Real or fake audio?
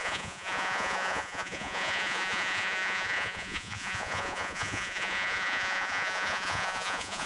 fake